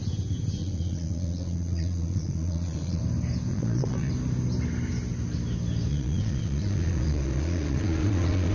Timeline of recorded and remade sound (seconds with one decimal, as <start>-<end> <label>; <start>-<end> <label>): 0.0-0.6 recorded; 0.6-3.0 remade; 3.0-3.5 recorded; 3.5-4.1 remade; 4.1-5.9 recorded; 5.9-8.5 remade